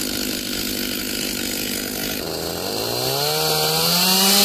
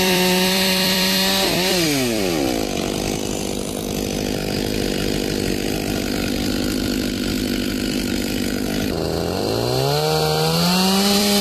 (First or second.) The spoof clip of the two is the second